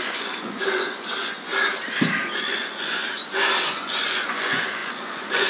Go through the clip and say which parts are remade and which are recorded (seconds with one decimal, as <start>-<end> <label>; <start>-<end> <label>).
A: 0.0-1.5 remade; 1.5-2.4 recorded; 2.4-3.2 remade; 3.2-3.7 recorded; 3.7-5.5 remade